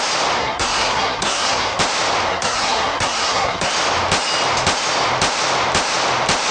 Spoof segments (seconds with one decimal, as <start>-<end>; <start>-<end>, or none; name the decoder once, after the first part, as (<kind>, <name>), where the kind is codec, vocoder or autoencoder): 0.4-1.8 (codec, SNAC); 2.3-3.7